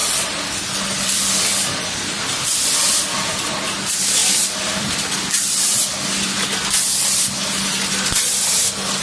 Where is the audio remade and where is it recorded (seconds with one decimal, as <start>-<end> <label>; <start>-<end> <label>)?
0.0-9.0 recorded